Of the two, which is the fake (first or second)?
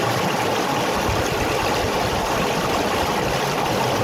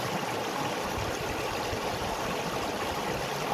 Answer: first